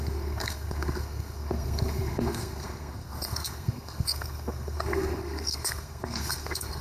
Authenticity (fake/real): fake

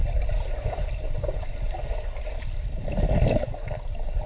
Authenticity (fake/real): real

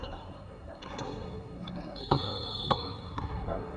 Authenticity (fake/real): fake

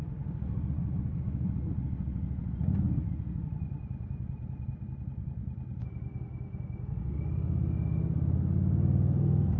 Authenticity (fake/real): real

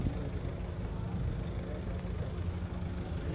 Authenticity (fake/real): real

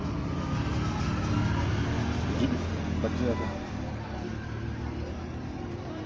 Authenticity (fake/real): real